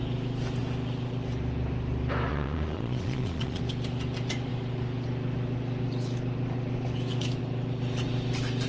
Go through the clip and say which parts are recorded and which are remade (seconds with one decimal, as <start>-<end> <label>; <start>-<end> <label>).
0.0-2.3 recorded; 2.3-3.6 remade; 3.6-8.7 recorded